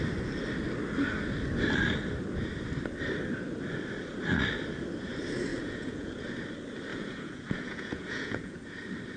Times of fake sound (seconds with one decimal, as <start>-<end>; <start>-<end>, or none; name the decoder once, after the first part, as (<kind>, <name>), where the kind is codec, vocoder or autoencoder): 5.5-6.3 (vocoder, Vocos); 6.9-8.6